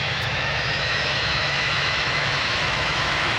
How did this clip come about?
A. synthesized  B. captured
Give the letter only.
A